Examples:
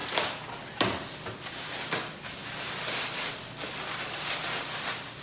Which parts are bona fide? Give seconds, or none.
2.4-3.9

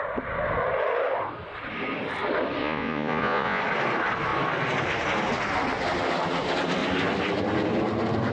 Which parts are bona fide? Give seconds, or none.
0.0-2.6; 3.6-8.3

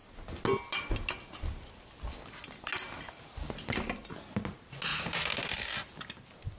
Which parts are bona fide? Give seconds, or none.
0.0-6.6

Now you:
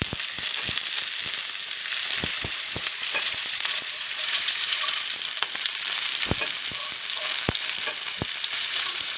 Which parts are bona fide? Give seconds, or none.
0.0-2.3; 5.0-8.5